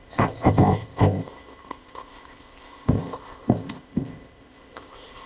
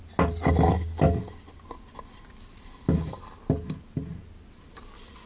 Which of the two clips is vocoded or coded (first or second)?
first